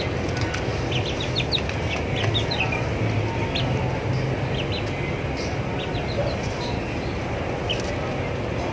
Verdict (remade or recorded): recorded